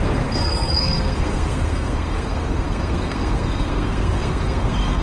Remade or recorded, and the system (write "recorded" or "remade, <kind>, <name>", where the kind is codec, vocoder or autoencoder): remade, codec, SNAC